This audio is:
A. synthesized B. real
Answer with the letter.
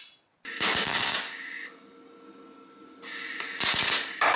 B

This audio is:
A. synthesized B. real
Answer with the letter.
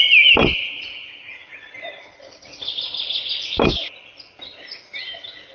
B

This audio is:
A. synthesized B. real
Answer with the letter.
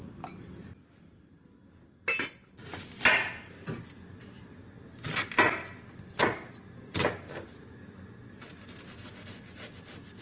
B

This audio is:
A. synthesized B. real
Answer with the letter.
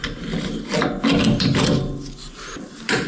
B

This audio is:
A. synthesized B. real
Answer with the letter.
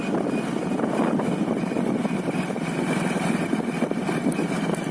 B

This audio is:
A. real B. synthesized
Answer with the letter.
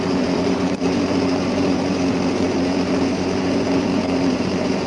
B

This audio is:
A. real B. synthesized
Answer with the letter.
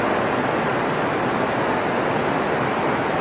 A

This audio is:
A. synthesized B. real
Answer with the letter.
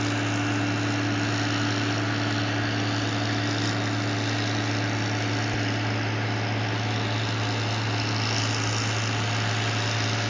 B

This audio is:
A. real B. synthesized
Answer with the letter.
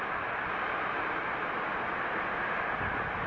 A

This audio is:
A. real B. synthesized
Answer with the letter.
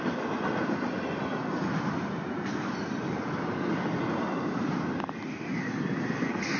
A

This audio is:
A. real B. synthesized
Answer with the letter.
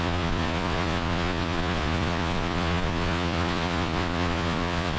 B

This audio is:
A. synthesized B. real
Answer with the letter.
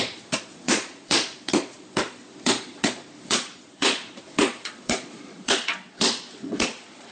A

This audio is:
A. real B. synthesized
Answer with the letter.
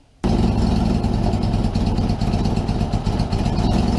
A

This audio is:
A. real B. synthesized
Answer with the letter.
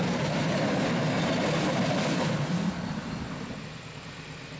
A